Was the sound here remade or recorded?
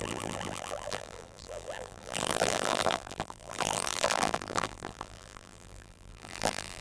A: remade